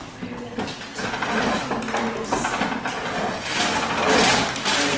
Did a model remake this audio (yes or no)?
no